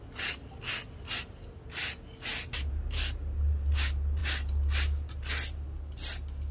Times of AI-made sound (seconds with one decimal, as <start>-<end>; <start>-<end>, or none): none